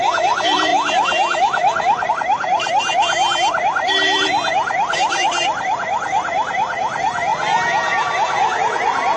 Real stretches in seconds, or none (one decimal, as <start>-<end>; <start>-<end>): 0.7-2.1; 2.9-3.6; 7.3-8.6